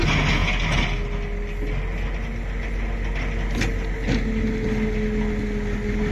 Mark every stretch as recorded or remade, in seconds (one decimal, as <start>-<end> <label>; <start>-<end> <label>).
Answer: 0.0-6.1 recorded

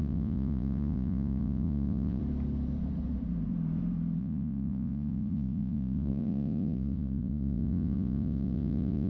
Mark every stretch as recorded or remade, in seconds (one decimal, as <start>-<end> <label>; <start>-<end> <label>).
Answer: 0.0-2.2 remade; 2.2-4.2 recorded; 4.2-9.1 remade

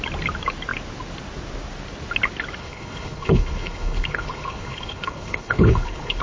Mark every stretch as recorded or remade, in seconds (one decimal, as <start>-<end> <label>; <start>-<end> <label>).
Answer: 0.0-2.6 recorded; 2.6-6.2 remade

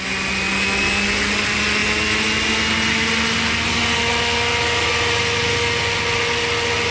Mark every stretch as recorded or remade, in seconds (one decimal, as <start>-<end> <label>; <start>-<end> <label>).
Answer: 0.0-6.9 recorded